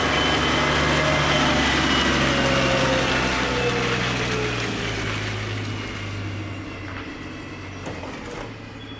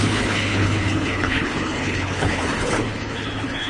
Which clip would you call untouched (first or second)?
first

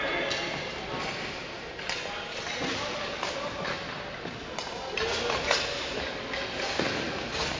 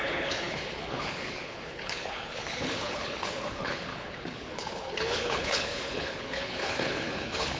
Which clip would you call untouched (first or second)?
first